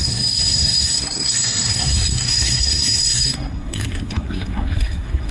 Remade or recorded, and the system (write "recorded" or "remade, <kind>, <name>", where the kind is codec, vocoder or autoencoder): remade, codec, SNAC